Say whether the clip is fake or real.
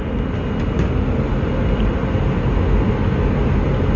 real